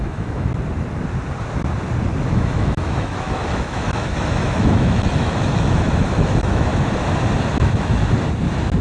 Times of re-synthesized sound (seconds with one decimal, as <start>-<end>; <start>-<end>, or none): 0.0-0.5; 2.3-6.7; 7.5-8.0